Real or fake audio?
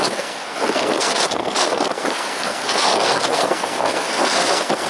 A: fake